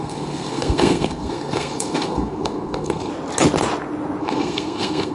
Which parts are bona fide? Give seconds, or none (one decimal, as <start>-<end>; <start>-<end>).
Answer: 3.1-4.2